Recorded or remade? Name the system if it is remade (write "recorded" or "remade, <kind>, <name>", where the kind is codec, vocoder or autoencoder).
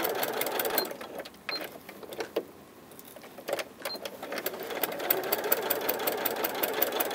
recorded